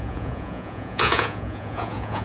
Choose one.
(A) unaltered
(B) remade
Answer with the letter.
B